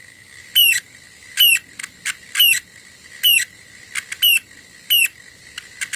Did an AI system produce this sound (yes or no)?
no